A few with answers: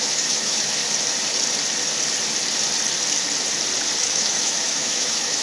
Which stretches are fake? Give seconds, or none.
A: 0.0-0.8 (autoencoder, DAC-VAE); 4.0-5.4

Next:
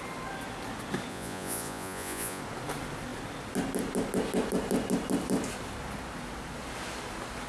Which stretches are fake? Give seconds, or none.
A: 1.1-2.4 (vocoder, Vocos)

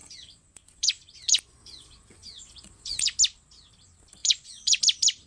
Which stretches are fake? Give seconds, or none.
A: 0.0-3.2 (vocoder, Vocos); 4.2-4.8

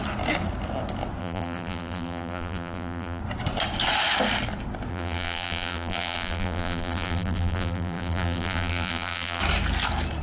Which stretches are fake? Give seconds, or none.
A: 1.2-3.2 (vocoder, BigVGAN v2); 4.9-9.4

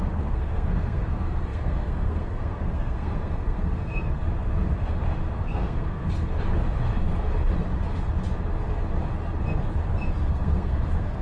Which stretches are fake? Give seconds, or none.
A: 0.0-4.2 (codec, SNAC); 5.4-6.0; 10.3-11.2